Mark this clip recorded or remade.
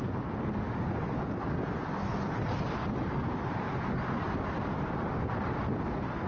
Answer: recorded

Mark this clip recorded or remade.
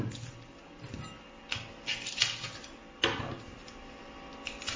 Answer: recorded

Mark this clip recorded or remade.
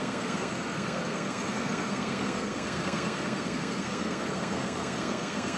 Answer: remade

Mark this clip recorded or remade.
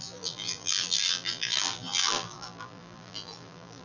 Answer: remade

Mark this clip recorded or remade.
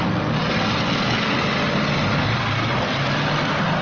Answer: recorded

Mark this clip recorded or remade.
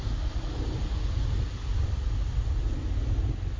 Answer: recorded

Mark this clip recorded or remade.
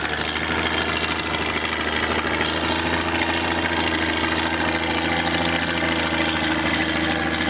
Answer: recorded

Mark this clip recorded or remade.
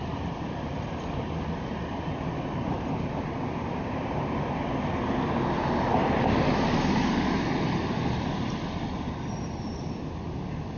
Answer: recorded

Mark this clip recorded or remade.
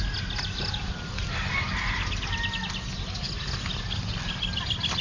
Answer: recorded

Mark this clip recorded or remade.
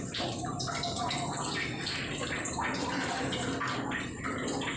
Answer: recorded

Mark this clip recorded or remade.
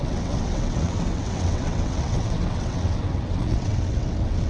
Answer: remade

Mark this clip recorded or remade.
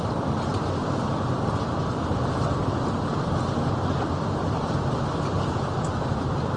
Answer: recorded